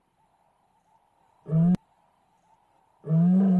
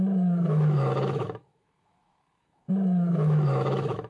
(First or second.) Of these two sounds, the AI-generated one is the second